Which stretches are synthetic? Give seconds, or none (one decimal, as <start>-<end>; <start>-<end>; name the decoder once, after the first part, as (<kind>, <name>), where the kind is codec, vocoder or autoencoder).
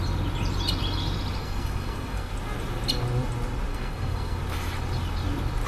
1.4-2.3 (codec, SNAC); 3.7-4.4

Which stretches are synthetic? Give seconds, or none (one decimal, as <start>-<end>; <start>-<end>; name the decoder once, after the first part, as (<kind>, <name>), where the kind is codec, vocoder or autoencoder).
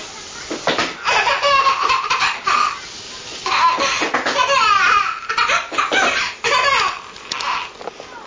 none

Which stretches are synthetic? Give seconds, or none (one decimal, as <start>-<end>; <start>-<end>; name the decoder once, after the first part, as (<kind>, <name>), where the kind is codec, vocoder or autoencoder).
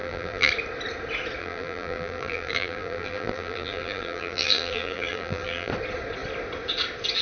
0.0-0.5 (vocoder, BigVGAN v2); 1.4-5.7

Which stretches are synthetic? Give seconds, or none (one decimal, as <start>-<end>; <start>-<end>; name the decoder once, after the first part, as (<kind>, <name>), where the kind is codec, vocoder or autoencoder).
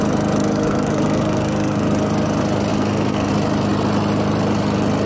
0.4-1.8 (codec, SNAC); 2.7-3.3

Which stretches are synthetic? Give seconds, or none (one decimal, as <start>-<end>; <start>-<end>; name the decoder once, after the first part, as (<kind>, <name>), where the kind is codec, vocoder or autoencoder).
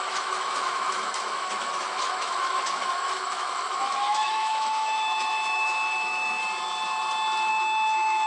0.0-6.4 (autoencoder, DAC-VAE); 7.5-8.3